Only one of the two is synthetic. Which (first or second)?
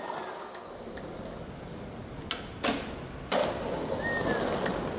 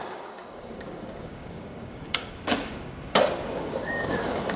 second